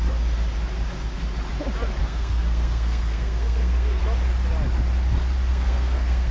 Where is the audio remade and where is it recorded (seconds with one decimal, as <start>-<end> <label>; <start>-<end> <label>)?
0.0-2.0 recorded; 2.0-4.0 remade; 4.0-5.5 recorded; 5.5-6.3 remade